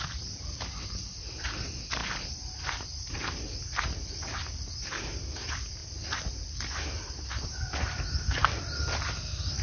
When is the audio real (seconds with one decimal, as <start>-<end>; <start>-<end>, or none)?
0.0-9.6

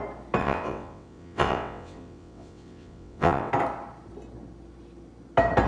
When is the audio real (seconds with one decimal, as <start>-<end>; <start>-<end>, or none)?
0.0-0.4; 3.5-5.7